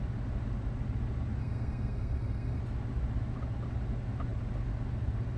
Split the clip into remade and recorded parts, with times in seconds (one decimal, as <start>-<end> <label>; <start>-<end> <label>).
0.0-1.4 recorded; 1.4-2.6 remade; 2.6-5.4 recorded